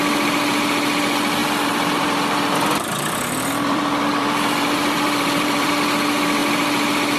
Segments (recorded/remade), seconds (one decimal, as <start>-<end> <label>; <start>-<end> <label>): 0.0-1.4 recorded; 1.4-5.7 remade; 5.7-7.2 recorded